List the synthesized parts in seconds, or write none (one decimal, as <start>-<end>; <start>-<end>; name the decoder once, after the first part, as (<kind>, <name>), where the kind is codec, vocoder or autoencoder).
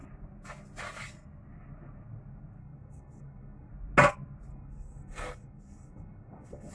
2.6-3.7 (codec, SNAC); 4.5-6.7